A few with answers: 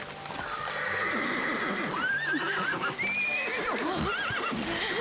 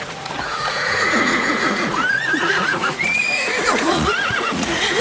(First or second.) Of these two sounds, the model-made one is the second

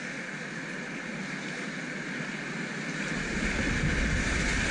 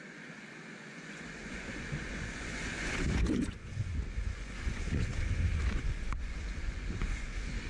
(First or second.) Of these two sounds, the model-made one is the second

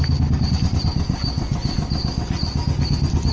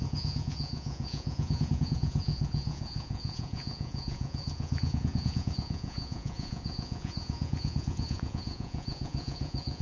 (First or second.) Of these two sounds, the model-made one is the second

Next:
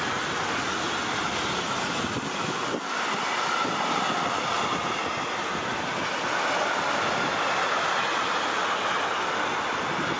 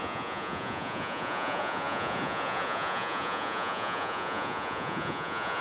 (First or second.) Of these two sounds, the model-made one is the second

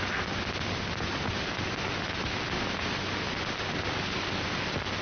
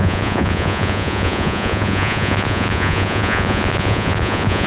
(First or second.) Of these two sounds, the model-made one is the second